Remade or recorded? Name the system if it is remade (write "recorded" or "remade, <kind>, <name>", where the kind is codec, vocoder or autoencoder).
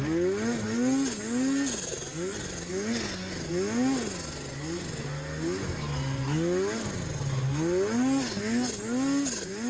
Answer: recorded